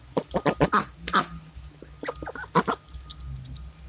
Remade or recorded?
recorded